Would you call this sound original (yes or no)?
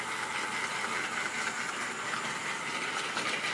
yes